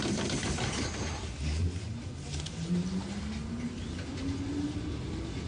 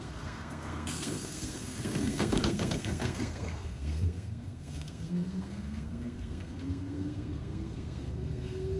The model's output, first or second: second